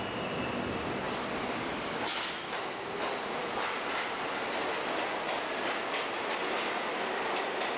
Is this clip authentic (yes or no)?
yes